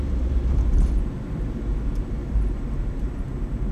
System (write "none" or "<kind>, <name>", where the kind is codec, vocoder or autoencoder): vocoder, BigVGAN v2